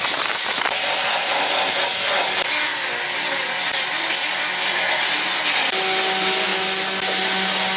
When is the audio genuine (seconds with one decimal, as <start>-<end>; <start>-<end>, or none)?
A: 0.0-7.8